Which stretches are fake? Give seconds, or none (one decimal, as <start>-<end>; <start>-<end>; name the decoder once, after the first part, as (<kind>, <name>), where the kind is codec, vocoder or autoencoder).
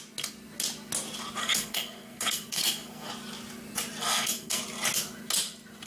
1.4-3.1 (codec, SNAC); 4.0-4.6